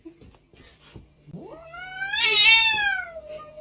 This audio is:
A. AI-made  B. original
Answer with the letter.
B